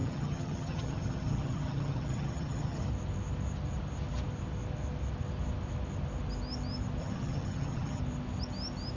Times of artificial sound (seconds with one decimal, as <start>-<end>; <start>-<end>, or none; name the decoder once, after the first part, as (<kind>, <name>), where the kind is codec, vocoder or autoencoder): 0.0-2.9 (vocoder, HiFi-GAN); 7.0-8.0